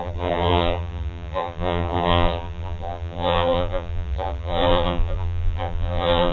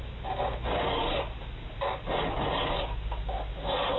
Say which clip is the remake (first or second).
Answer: first